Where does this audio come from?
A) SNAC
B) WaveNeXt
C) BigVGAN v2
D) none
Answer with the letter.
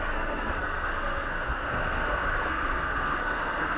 A